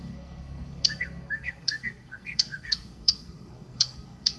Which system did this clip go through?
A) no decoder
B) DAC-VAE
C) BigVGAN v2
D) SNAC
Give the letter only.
D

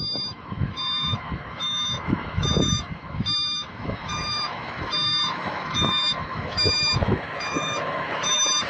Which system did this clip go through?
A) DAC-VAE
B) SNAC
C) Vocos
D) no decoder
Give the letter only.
A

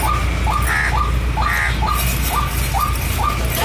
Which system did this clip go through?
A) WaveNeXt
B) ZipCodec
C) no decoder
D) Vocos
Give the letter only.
C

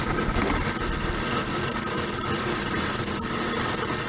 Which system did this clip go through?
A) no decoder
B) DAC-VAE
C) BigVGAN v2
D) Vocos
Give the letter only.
A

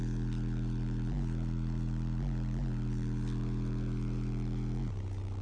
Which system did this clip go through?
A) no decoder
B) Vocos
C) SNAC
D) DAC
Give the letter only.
A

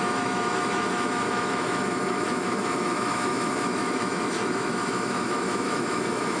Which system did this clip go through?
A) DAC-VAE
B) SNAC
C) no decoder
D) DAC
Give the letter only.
A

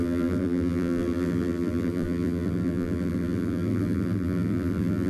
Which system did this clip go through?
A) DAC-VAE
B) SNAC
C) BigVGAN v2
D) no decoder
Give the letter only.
C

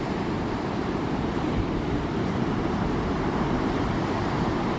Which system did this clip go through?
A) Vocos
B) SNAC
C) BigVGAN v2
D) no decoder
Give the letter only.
C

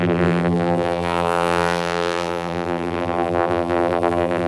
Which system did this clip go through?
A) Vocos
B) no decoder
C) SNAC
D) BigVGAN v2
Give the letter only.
D